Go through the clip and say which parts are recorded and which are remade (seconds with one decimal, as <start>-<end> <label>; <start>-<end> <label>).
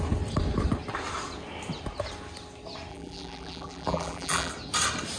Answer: 0.0-2.9 recorded; 2.9-4.5 remade; 4.5-5.2 recorded